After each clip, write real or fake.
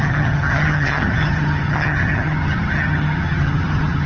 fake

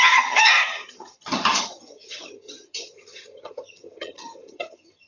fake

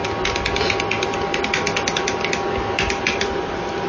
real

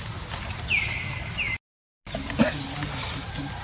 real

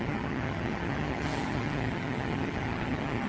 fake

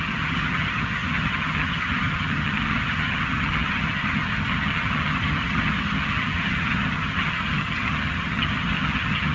fake